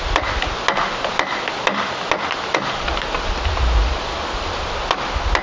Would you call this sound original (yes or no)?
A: yes